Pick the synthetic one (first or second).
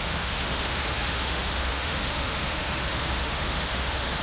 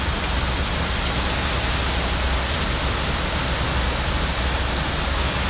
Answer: first